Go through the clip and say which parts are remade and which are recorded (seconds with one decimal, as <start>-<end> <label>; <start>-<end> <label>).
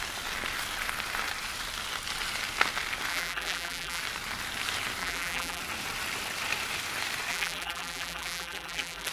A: 0.0-3.1 recorded; 3.1-4.0 remade; 4.0-5.0 recorded; 5.0-5.6 remade; 5.6-7.3 recorded; 7.3-9.1 remade